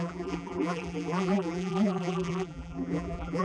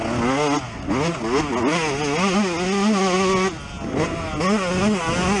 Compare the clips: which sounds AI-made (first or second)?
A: first